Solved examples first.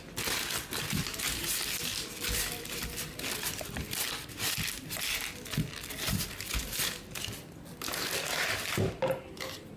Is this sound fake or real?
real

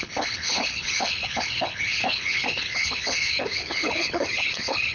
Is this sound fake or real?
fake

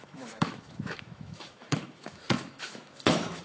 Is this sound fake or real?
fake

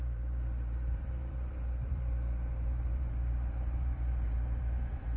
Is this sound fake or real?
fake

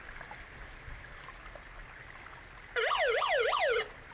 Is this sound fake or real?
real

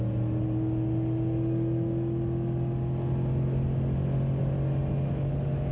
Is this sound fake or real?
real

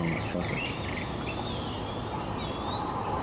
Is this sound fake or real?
real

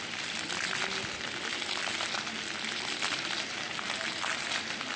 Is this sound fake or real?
real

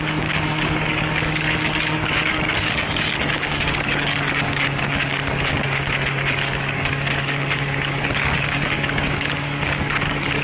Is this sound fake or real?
fake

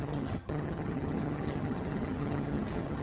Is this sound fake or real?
fake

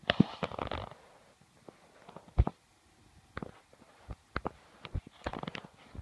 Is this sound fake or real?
real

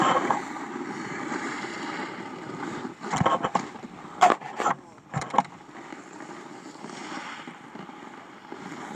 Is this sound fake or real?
fake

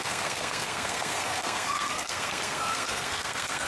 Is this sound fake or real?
fake